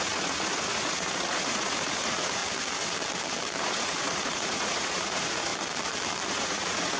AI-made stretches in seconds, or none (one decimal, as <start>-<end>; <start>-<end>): 0.0-2.4; 3.6-5.5; 6.3-7.0